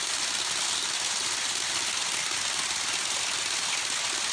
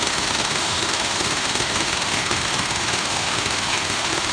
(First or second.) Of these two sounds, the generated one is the second